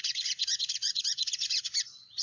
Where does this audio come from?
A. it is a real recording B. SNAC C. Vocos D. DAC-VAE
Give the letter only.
C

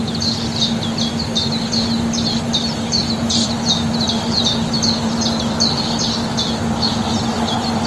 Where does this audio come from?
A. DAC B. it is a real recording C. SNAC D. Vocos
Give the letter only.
B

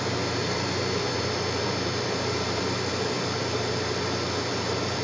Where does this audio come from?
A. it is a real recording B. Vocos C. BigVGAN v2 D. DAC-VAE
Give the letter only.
C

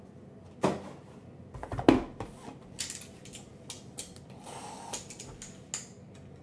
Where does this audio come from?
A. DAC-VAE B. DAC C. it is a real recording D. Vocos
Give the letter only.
C